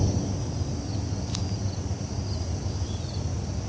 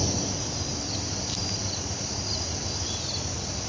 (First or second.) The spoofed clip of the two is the second